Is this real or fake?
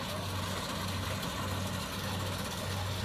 real